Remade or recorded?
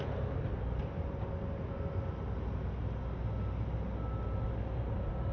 recorded